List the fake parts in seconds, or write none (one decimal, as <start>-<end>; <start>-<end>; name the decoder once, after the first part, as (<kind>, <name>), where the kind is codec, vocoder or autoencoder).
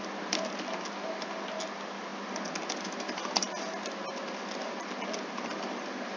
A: none